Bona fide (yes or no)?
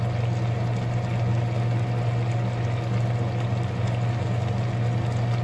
yes